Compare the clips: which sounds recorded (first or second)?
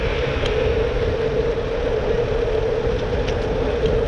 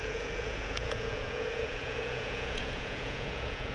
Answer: first